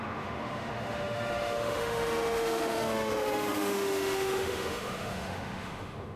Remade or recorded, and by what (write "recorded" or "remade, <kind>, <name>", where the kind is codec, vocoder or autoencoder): remade, autoencoder, DAC-VAE